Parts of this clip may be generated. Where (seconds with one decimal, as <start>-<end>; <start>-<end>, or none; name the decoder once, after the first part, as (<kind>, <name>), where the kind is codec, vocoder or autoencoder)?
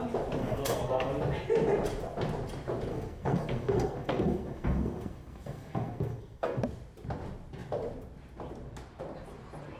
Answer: 0.4-1.1 (codec, SNAC); 2.9-6.6